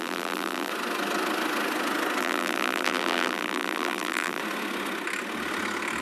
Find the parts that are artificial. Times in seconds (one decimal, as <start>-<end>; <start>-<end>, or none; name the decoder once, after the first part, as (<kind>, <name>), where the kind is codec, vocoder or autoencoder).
0.0-0.7 (vocoder, BigVGAN v2); 2.2-4.4